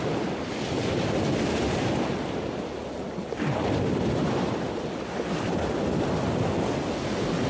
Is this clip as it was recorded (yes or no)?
yes